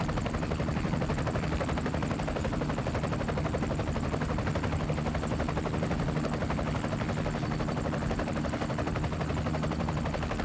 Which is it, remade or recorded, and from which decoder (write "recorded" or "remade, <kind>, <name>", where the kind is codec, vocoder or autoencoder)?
recorded